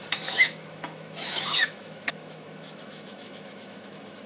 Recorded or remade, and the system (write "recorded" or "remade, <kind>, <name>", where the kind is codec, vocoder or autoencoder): remade, autoencoder, DAC-VAE